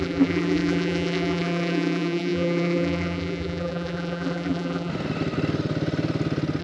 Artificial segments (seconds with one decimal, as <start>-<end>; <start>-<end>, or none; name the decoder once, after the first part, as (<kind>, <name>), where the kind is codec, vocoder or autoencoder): 0.0-4.9 (vocoder, BigVGAN v2)